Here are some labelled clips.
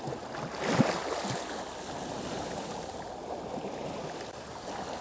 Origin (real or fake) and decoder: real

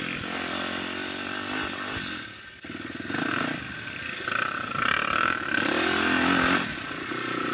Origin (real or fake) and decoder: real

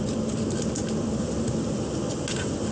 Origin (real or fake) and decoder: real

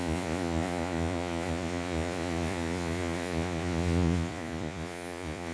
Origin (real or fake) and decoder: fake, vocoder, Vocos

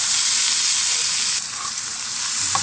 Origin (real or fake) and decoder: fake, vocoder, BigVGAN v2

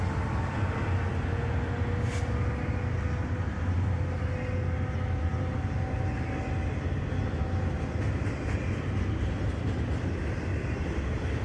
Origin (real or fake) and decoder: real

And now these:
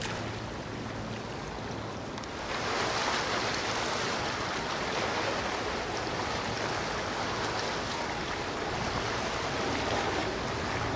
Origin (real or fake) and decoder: real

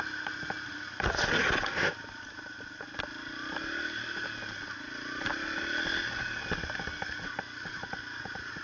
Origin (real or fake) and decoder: real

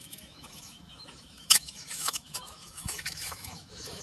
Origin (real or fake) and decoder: fake, autoencoder, DAC-VAE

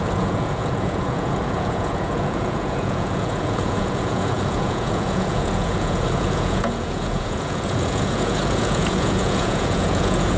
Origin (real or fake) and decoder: fake, vocoder, Vocos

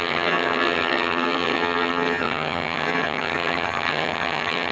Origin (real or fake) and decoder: fake, vocoder, HiFi-GAN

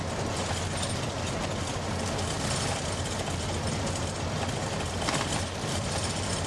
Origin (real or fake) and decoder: real